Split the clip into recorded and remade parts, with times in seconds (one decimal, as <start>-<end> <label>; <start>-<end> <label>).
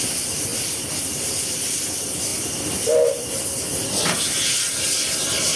0.0-0.5 remade; 0.5-1.1 recorded; 1.1-5.6 remade